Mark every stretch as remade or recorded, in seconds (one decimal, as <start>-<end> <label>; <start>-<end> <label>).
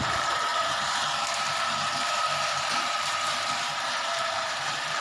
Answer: 0.0-5.0 remade